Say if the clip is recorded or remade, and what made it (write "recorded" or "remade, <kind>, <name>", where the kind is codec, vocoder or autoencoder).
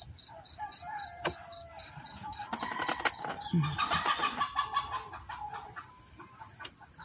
recorded